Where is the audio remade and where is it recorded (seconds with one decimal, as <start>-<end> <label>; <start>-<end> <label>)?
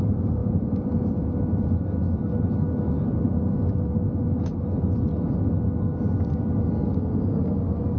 0.0-8.0 recorded